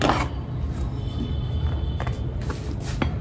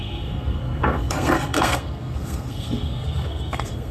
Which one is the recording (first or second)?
first